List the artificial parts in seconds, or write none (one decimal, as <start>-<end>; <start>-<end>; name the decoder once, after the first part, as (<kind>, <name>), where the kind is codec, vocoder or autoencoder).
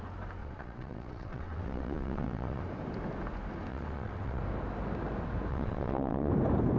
0.4-2.6 (vocoder, WaveNeXt); 3.7-4.4; 5.5-6.3